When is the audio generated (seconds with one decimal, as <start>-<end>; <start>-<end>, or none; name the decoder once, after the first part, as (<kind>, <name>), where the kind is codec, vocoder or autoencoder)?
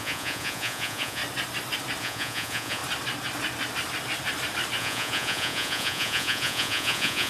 0.0-1.2 (vocoder, Vocos); 2.0-2.8; 4.8-7.3